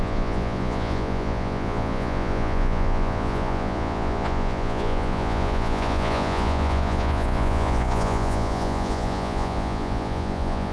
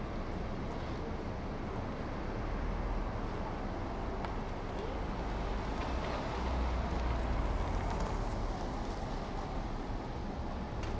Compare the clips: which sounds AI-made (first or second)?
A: first